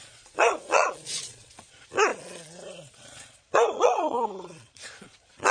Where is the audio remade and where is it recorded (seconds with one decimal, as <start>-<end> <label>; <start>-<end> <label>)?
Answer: 0.0-5.5 remade